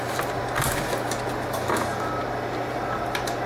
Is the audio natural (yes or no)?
yes